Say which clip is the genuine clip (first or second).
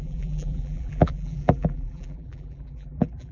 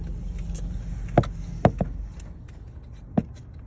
second